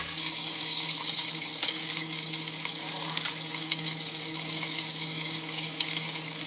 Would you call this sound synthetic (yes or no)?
yes